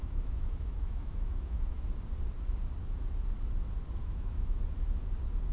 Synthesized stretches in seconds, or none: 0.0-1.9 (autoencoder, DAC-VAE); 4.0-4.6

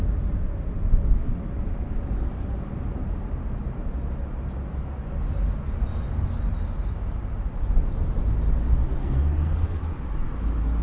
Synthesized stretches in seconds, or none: 9.0-9.8 (codec, SNAC)

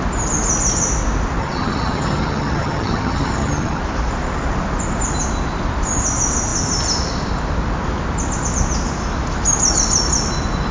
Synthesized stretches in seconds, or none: 1.4-3.8 (vocoder, HiFi-GAN)

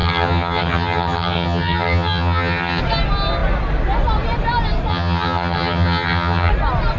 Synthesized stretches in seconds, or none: 0.0-2.8 (vocoder, HiFi-GAN); 4.9-6.5

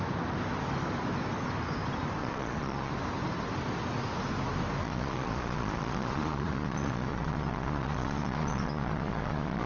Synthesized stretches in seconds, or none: 2.2-2.9 (vocoder, Vocos); 4.8-9.7